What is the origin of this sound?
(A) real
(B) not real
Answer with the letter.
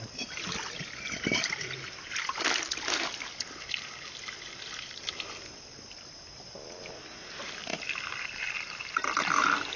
A